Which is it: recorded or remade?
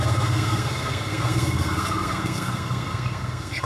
remade